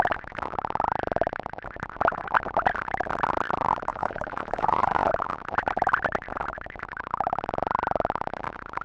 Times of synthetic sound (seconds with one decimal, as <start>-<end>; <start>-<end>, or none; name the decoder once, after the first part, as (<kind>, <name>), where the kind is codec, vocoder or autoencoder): 3.9-5.1 (vocoder, Vocos)